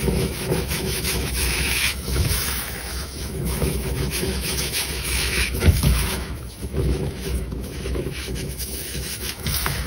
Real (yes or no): no